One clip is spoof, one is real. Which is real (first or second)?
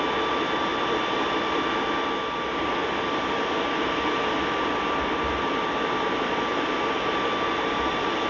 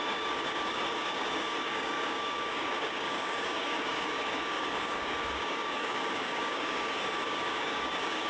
first